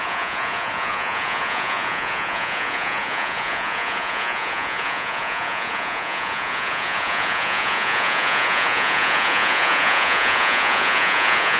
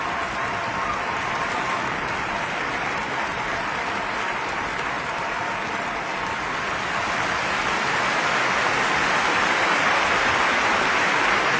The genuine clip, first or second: second